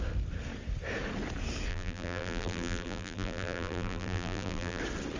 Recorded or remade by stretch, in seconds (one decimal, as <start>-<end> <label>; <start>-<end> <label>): 0.0-1.7 recorded; 1.7-4.8 remade; 4.8-5.2 recorded